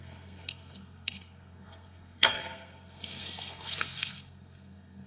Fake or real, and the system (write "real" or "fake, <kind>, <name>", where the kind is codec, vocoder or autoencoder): fake, codec, SNAC